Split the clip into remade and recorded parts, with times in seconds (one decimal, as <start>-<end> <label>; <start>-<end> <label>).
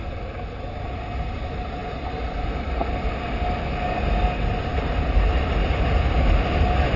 0.0-7.0 recorded